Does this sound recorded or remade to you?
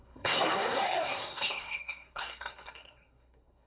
remade